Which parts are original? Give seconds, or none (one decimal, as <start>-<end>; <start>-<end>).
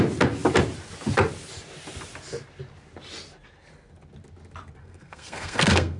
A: 0.0-4.8